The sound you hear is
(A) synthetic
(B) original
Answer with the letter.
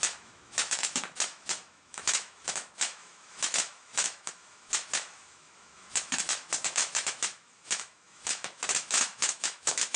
A